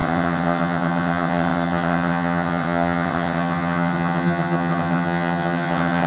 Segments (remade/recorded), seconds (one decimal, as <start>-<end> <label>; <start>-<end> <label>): 0.0-6.1 remade